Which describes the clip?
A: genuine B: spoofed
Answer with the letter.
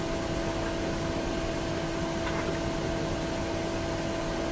A